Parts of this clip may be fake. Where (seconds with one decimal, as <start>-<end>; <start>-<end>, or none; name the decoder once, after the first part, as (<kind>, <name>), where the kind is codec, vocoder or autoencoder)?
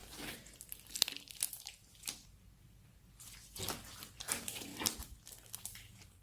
none